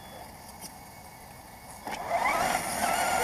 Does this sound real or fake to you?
real